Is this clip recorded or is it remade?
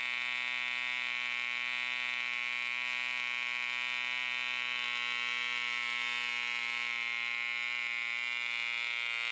recorded